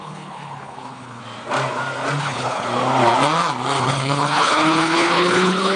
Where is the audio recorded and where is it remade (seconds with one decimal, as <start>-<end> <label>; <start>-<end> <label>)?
0.0-1.2 remade; 1.2-2.2 recorded; 2.2-2.7 remade; 2.7-3.8 recorded; 3.8-5.8 remade